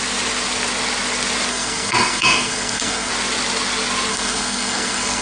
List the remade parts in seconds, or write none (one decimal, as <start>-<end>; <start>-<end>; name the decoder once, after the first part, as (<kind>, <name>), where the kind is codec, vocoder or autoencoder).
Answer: 1.5-3.1 (codec, SNAC); 4.1-5.2